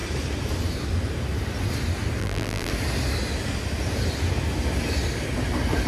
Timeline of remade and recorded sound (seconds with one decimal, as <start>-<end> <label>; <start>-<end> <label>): 0.0-2.2 recorded; 2.2-2.7 remade; 2.7-5.9 recorded